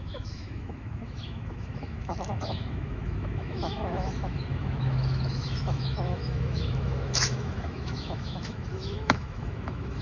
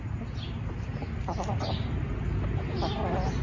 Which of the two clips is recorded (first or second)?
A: second